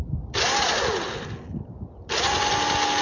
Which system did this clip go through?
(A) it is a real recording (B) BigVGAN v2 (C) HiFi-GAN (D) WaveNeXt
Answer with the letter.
A